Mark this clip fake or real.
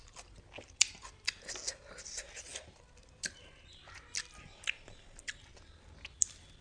real